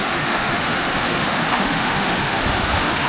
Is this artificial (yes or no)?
yes